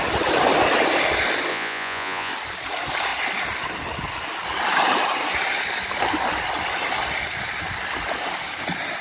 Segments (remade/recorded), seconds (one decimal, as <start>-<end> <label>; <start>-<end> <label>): 0.0-1.5 recorded; 1.5-2.3 remade; 2.3-9.0 recorded